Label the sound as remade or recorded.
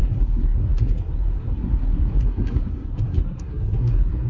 remade